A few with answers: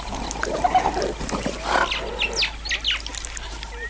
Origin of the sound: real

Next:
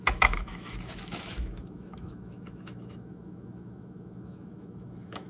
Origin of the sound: fake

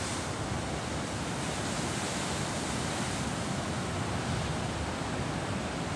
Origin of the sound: real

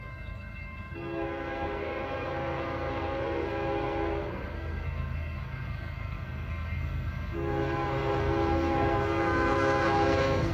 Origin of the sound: fake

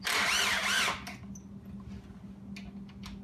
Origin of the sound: real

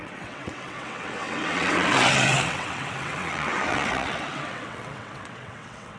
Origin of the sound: fake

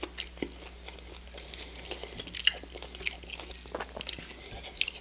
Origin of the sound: real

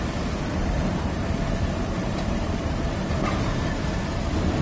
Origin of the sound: fake